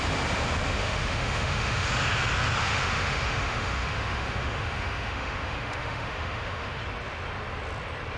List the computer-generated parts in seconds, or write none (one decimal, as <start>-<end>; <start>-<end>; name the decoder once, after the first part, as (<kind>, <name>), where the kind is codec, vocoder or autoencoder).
0.8-1.9 (autoencoder, DAC-VAE); 2.6-6.8

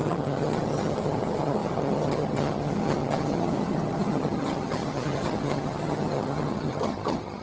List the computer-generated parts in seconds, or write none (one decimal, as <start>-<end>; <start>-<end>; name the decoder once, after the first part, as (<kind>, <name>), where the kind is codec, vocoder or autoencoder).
0.0-7.4 (vocoder, HiFi-GAN)